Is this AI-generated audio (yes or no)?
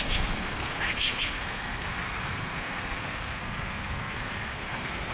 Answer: yes